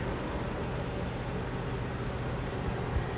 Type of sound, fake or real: real